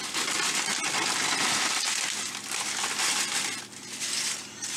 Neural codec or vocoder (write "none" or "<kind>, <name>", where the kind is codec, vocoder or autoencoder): none